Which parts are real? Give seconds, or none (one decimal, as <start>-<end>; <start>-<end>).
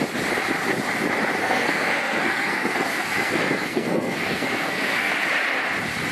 0.0-1.4; 5.1-6.1